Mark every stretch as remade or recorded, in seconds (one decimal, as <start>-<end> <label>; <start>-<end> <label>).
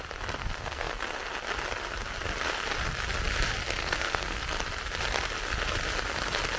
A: 0.0-0.4 recorded; 0.4-0.9 remade; 0.9-3.8 recorded; 3.8-4.4 remade; 4.4-6.6 recorded